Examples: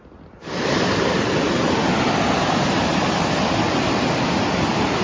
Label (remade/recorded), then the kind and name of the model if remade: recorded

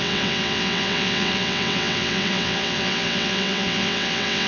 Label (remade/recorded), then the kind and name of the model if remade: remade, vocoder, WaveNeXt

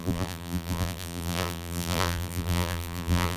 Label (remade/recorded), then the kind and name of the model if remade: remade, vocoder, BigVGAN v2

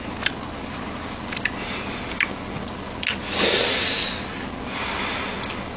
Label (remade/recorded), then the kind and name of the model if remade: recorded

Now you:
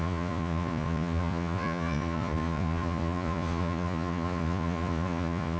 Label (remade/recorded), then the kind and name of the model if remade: remade, vocoder, Vocos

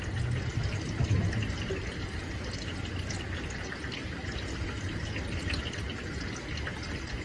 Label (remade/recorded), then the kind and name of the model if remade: recorded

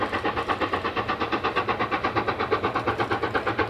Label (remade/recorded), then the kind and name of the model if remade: recorded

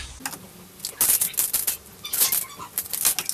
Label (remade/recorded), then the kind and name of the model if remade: recorded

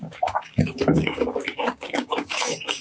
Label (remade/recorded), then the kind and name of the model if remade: remade, codec, DAC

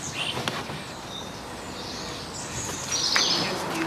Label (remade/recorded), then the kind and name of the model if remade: recorded